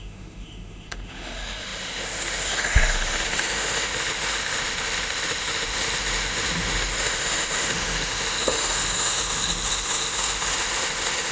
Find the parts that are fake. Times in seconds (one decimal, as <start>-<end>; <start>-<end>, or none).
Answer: 0.0-11.3